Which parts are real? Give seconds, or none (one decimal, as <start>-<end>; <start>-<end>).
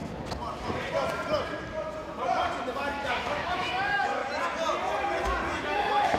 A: 0.0-3.1; 4.2-5.6